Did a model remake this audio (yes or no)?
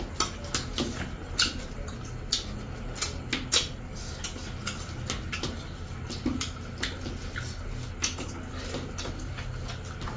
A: no